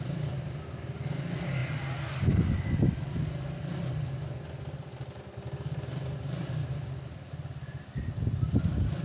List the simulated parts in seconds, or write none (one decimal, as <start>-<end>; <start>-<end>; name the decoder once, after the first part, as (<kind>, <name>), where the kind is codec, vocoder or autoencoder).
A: none